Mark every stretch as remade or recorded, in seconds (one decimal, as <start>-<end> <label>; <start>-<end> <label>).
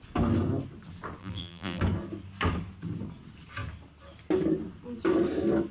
0.0-1.2 recorded; 1.2-1.8 remade; 1.8-5.7 recorded